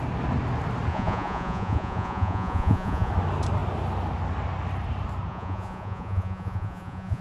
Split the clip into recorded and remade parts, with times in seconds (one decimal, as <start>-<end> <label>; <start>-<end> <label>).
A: 0.0-0.9 recorded; 0.9-3.1 remade; 3.1-5.3 recorded; 5.3-7.2 remade